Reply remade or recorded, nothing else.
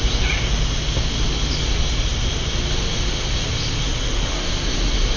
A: recorded